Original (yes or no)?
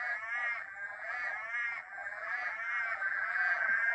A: no